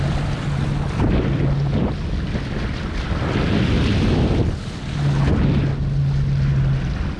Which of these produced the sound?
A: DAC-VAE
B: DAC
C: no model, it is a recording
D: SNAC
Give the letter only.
C